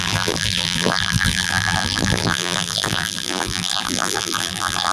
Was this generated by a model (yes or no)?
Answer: yes